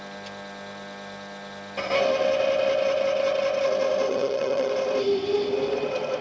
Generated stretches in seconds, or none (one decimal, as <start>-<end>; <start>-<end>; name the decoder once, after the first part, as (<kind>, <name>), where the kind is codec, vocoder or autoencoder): 4.1-4.7 (vocoder, HiFi-GAN)